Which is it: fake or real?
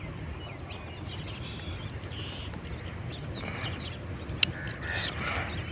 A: real